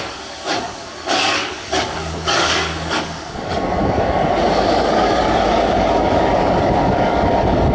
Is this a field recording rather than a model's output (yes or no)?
no